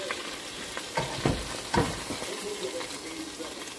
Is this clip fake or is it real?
real